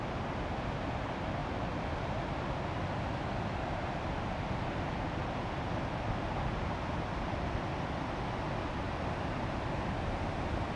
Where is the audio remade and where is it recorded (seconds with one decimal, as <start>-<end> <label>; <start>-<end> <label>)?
0.0-10.8 recorded